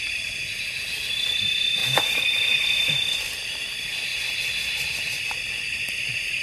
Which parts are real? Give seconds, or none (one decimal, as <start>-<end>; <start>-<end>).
4.1-5.0